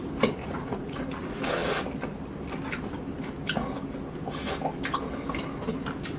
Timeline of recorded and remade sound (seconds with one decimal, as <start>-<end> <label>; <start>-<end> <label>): 0.0-0.4 recorded; 0.4-1.0 remade; 1.0-6.2 recorded